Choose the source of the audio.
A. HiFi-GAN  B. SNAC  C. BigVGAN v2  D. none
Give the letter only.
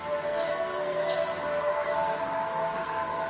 B